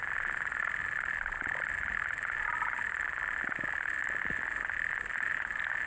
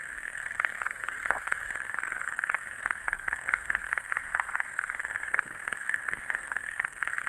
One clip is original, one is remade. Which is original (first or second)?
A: first